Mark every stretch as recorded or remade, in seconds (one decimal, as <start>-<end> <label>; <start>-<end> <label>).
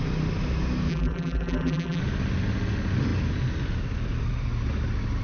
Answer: 0.0-0.9 recorded; 0.9-2.0 remade; 2.0-5.2 recorded